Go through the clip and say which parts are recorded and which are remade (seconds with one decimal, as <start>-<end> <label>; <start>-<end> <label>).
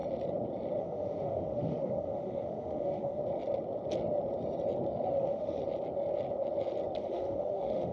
0.0-0.8 recorded; 0.8-3.2 remade; 3.2-5.1 recorded; 5.1-5.6 remade; 5.6-7.0 recorded; 7.0-7.9 remade